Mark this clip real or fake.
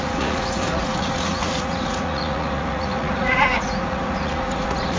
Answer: fake